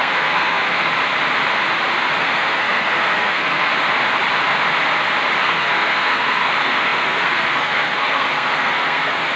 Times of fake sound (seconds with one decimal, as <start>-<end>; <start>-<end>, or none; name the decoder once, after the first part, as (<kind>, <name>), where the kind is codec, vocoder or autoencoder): 0.0-0.9 (codec, SNAC); 2.2-3.7; 5.4-9.4